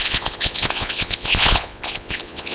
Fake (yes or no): yes